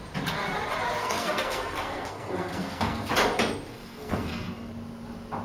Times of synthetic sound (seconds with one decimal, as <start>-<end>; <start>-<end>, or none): 1.0-3.1; 3.7-4.7